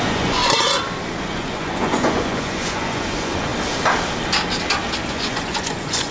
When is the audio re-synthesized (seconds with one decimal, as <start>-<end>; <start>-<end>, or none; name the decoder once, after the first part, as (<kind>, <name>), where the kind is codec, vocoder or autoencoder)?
0.0-0.4 (vocoder, Vocos); 1.2-3.5; 5.1-6.1

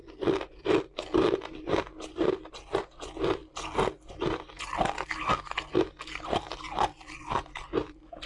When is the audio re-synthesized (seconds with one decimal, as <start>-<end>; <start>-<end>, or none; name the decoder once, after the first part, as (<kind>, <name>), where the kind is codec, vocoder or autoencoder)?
none